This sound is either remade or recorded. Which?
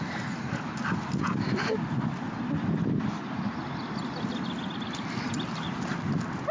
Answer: recorded